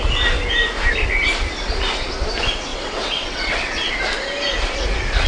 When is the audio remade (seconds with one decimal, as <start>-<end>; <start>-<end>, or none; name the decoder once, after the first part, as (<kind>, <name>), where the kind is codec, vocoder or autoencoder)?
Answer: 2.7-3.9 (vocoder, WaveNeXt)